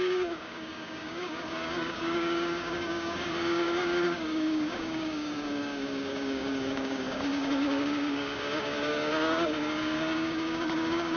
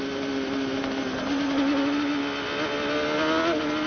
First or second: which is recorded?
second